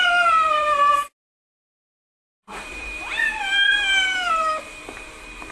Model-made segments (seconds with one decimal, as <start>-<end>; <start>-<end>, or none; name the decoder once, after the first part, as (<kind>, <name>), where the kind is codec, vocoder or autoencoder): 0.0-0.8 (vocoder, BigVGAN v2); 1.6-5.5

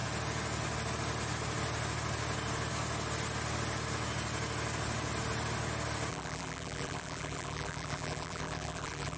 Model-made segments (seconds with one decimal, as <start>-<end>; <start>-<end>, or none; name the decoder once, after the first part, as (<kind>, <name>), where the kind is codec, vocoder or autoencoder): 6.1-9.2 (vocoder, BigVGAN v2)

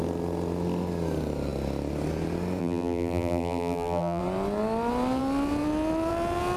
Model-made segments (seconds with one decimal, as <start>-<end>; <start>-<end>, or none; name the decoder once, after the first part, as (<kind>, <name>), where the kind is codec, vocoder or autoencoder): 2.6-4.2 (vocoder, BigVGAN v2)

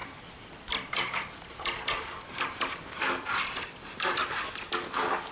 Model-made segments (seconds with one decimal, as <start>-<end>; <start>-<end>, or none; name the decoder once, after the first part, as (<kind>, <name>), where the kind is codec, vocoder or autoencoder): 0.0-4.2 (vocoder, BigVGAN v2)

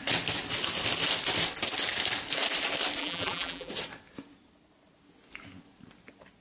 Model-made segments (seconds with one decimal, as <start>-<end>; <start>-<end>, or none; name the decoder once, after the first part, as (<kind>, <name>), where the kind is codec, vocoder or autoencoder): 3.0-3.7 (vocoder, BigVGAN v2)